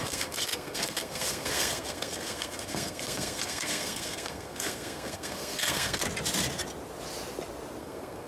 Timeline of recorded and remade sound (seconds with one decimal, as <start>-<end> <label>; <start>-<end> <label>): 0.0-6.0 remade; 6.0-7.8 recorded; 7.8-8.3 remade